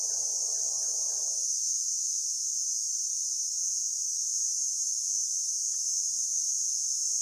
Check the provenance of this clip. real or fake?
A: real